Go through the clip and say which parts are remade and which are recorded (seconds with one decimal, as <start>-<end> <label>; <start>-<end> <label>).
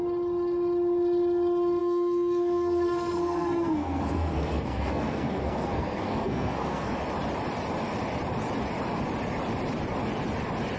0.0-1.8 recorded; 1.8-6.9 remade; 6.9-10.8 recorded